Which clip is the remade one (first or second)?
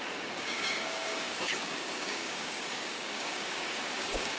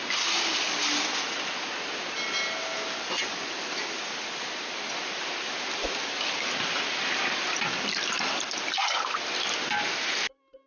first